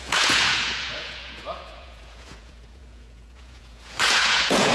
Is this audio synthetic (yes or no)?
yes